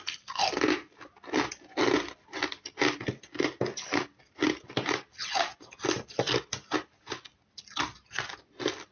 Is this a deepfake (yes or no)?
no